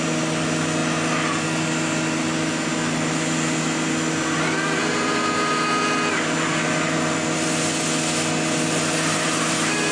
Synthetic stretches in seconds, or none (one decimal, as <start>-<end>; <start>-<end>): none